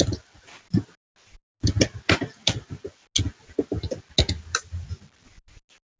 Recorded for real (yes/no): yes